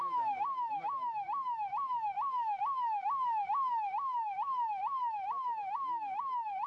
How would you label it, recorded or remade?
remade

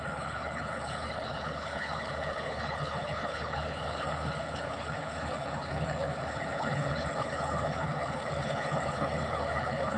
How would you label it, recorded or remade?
remade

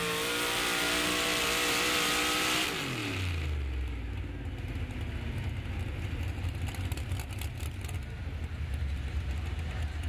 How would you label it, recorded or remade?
recorded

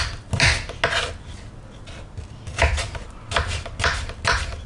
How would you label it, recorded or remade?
recorded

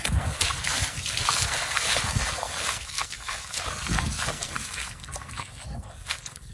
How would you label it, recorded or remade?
remade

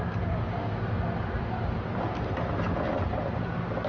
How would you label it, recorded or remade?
recorded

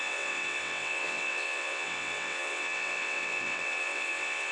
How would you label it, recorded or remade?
remade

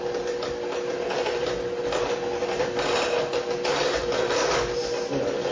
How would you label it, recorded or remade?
recorded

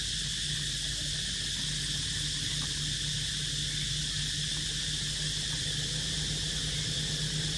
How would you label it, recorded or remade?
recorded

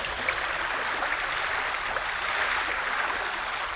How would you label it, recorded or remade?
recorded